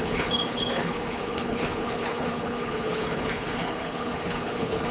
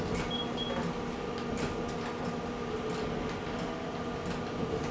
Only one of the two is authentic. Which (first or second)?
second